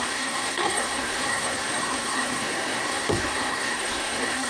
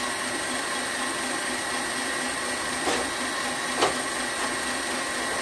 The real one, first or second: second